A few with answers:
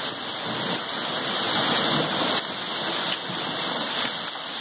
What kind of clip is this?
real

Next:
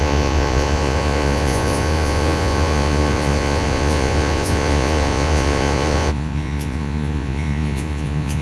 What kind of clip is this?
fake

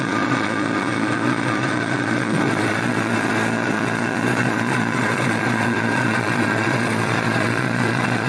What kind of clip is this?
fake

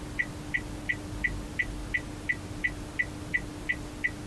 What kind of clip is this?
real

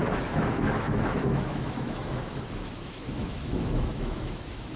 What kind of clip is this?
fake